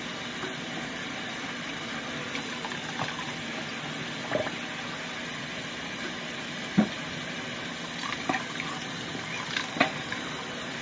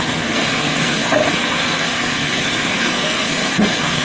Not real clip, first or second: second